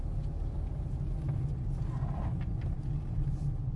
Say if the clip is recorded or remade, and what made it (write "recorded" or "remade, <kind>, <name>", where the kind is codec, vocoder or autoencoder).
recorded